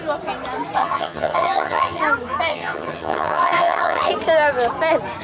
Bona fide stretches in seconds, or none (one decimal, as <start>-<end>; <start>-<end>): 0.0-0.8; 2.0-2.5; 4.1-5.2